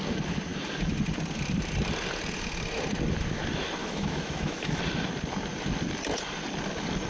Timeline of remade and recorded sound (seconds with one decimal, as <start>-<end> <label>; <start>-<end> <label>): 0.0-3.8 recorded; 3.8-4.8 remade; 4.8-7.1 recorded